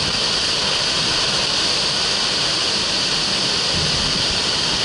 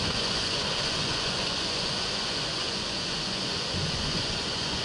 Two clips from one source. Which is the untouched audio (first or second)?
first